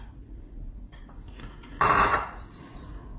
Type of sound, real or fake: fake